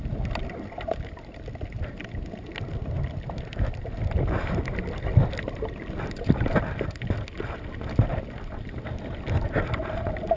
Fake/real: real